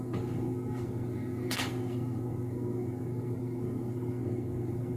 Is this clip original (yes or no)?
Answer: no